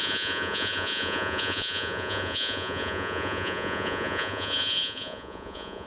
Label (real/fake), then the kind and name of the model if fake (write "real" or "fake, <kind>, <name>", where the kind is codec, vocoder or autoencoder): fake, vocoder, Vocos